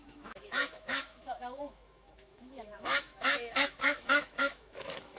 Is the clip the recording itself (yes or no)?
no